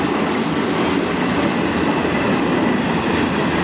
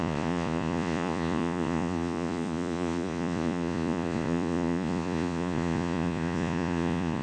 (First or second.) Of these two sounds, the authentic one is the first